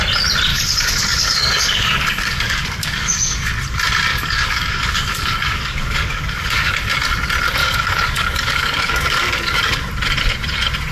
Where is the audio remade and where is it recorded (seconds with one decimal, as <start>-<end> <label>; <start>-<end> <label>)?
0.0-0.5 recorded; 0.5-3.6 remade; 3.6-4.1 recorded; 4.1-6.9 remade; 6.9-7.6 recorded; 7.6-9.9 remade; 9.9-10.9 recorded